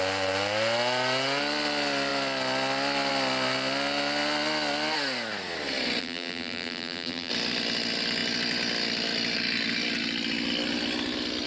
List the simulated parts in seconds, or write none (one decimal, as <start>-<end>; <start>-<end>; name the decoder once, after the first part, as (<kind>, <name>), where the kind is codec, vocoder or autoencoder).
6.0-7.3 (vocoder, BigVGAN v2)